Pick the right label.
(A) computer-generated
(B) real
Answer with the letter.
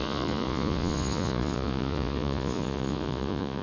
A